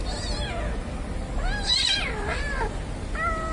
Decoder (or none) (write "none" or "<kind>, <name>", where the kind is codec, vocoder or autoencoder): none